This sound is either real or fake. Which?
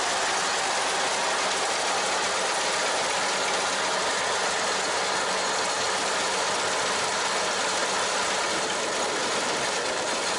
real